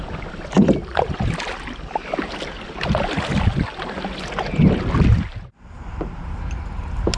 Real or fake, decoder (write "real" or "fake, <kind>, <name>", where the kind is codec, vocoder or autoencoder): real